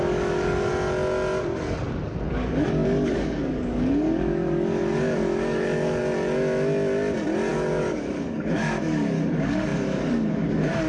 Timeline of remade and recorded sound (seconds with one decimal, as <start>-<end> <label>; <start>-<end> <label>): 0.0-0.7 remade; 0.7-2.3 recorded; 2.3-6.0 remade; 6.0-7.5 recorded; 7.5-10.9 remade